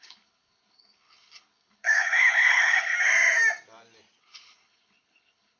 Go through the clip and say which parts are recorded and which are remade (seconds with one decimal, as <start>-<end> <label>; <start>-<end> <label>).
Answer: 0.0-2.9 remade; 2.9-4.2 recorded; 4.2-5.6 remade